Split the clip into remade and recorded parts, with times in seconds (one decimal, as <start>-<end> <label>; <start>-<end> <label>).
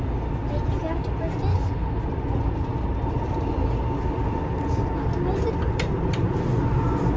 0.0-1.5 recorded; 1.5-2.0 remade; 2.0-7.2 recorded